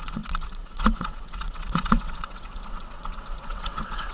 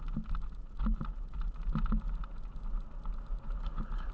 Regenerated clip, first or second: first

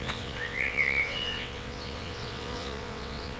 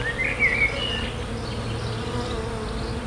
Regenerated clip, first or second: first